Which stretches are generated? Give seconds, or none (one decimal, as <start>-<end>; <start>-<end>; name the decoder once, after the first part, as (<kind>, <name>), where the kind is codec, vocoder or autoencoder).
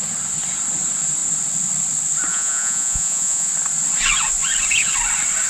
2.3-3.5 (vocoder, Vocos)